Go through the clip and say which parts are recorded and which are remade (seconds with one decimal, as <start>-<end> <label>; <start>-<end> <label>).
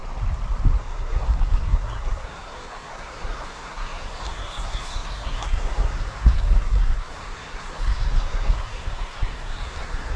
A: 0.0-0.8 recorded; 0.8-10.2 remade